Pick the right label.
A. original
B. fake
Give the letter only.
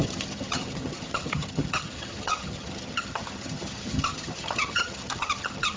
B